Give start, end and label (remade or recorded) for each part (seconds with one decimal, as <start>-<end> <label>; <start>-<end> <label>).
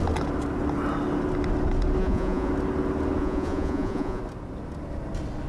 0.0-2.0 recorded; 2.0-2.5 remade; 2.5-3.2 recorded; 3.2-4.2 remade; 4.2-5.5 recorded